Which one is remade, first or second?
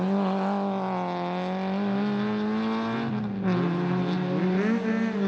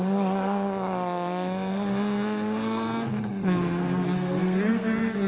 second